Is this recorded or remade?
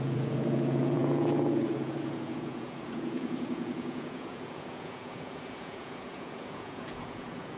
remade